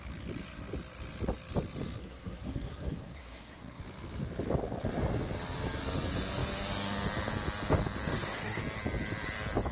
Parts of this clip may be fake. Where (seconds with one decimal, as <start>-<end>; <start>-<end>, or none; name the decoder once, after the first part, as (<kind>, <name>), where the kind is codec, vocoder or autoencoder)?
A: 2.0-3.8 (codec, SNAC); 8.1-8.6